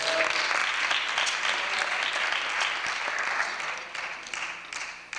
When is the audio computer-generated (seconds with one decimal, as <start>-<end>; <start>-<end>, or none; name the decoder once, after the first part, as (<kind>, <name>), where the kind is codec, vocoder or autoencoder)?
none